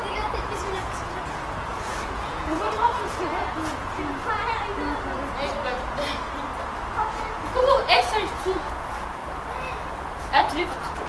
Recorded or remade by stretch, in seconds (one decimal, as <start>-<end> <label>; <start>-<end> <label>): 0.0-4.1 remade; 4.1-7.7 recorded; 7.7-9.2 remade; 9.2-10.0 recorded; 10.0-11.1 remade